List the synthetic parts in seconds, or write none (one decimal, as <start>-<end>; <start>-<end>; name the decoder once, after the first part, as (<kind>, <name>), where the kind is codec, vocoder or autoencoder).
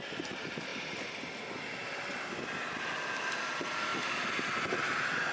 none